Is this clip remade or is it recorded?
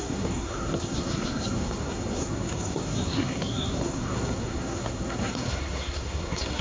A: remade